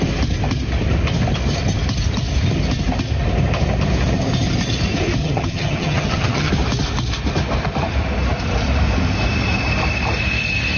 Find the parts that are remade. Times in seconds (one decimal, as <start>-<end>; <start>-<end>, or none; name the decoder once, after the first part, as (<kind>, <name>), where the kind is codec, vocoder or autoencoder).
5.2-6.5 (vocoder, HiFi-GAN)